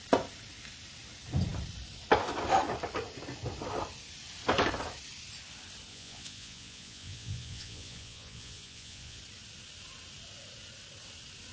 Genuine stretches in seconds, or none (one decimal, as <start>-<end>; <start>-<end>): 0.0-5.9; 9.2-11.5